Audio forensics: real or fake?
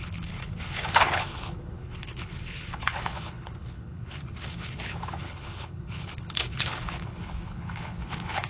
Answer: fake